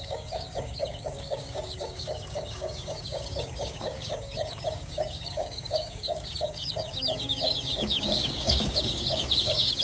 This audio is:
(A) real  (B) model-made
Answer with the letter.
B